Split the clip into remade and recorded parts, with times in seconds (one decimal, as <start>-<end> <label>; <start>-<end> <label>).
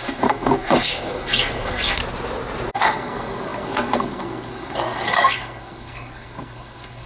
0.0-2.0 remade; 2.0-2.7 recorded; 2.7-7.1 remade